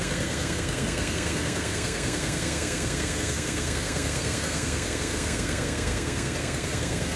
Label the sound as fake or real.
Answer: fake